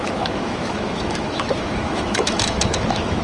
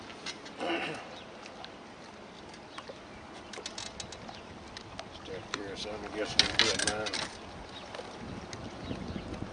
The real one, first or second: second